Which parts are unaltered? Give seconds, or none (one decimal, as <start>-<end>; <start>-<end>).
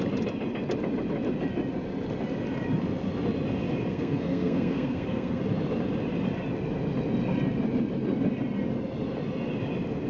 0.0-3.9; 5.4-10.1